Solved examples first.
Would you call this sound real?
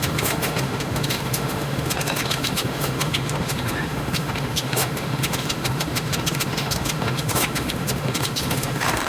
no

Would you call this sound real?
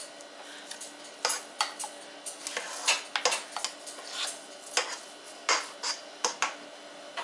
yes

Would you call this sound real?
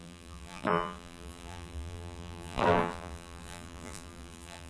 no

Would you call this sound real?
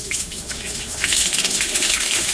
no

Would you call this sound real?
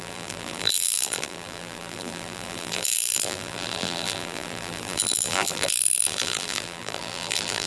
no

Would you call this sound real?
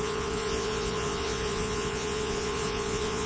no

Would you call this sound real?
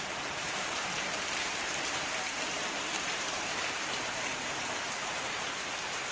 no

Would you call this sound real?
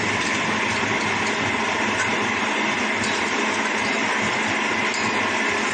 yes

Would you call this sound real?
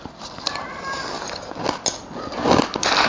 yes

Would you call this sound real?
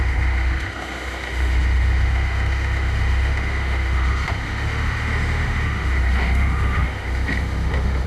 no